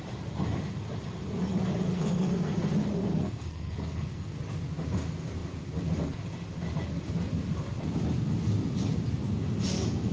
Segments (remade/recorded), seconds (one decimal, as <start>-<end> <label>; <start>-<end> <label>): 0.0-1.9 recorded; 1.9-2.5 remade; 2.5-3.1 recorded; 3.1-4.4 remade; 4.4-10.1 recorded